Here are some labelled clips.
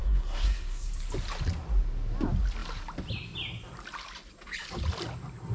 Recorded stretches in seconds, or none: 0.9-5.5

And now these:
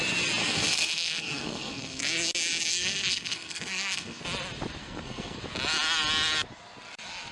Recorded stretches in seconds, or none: 0.0-0.4; 2.0-2.7; 4.2-4.8; 5.4-7.3

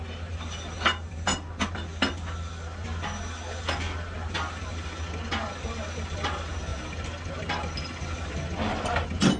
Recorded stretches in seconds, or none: 0.0-9.4

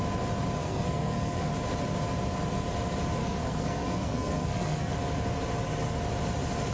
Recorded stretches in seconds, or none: 0.0-0.6; 1.5-3.2; 4.9-6.7

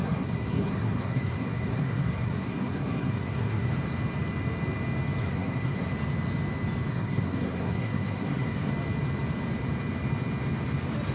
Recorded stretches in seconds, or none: 3.7-5.2; 5.9-6.9; 8.7-11.1